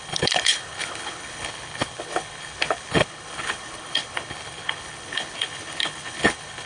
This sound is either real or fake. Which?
fake